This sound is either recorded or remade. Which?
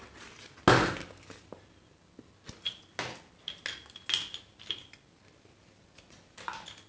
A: recorded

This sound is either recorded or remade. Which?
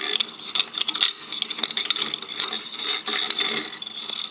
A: recorded